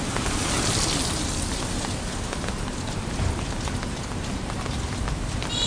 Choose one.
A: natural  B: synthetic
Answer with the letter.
A